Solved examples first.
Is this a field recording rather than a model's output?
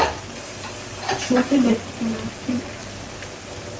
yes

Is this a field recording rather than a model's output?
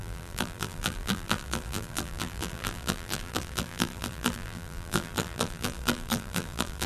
no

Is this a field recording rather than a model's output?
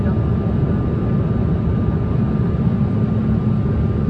yes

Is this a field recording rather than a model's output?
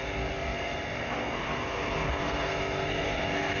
no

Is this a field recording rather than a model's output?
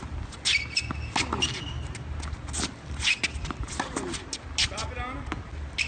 yes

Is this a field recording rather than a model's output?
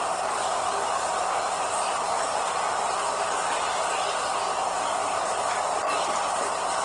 yes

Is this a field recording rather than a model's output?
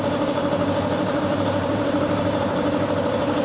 no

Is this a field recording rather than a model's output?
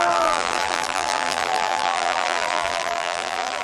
no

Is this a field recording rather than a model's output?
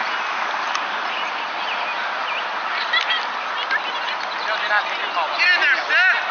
yes